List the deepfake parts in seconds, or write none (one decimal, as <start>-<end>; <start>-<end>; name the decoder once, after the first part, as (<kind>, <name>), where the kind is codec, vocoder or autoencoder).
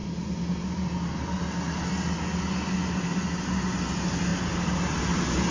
none